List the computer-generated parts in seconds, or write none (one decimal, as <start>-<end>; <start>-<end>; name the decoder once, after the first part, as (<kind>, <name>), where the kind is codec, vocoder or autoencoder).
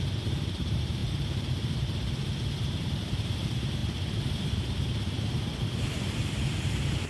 0.0-7.1 (vocoder, BigVGAN v2)